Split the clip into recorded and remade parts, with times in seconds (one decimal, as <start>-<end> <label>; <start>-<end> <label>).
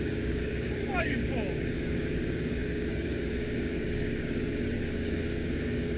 0.0-6.0 remade